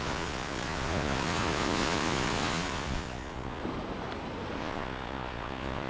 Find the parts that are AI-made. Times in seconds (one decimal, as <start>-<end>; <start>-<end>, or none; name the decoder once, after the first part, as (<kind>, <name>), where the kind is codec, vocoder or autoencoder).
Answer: 0.0-3.6 (vocoder, Vocos); 4.6-5.9

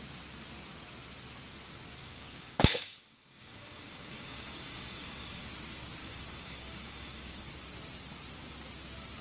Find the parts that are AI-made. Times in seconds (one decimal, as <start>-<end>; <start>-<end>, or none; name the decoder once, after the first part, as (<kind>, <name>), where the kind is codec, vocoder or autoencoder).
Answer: 2.0-5.4 (codec, DAC); 6.0-7.5

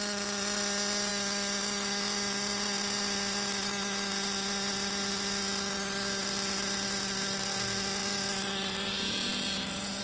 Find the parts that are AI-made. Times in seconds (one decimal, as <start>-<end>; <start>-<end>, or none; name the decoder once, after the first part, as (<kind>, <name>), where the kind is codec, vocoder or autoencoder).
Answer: none

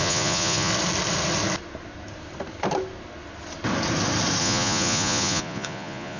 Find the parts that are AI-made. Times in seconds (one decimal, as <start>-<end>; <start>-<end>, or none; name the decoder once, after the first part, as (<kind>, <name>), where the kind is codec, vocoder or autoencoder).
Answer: 0.0-0.7 (vocoder, Vocos); 4.4-6.2

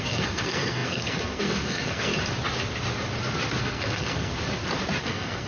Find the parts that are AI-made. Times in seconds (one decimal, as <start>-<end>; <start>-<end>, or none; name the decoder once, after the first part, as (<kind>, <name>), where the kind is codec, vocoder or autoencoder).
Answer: 0.0-2.1 (codec, SNAC); 3.6-4.3; 5.0-5.5

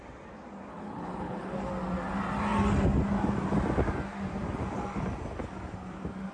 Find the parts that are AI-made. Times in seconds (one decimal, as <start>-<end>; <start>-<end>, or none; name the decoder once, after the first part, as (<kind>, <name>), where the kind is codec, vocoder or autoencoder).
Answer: 0.7-1.6 (codec, HILCodec)